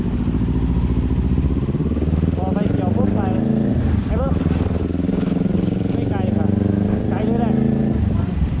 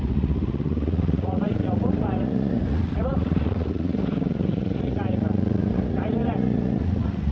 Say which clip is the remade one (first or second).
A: second